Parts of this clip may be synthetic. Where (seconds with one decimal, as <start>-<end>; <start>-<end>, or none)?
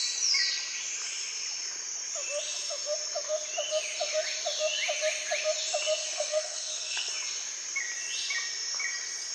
6.0-7.1